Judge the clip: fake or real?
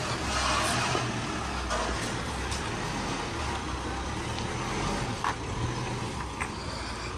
real